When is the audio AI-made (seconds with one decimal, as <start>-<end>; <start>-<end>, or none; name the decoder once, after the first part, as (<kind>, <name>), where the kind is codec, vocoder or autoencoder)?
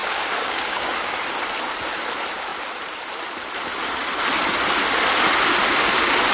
0.0-1.2 (codec, DAC)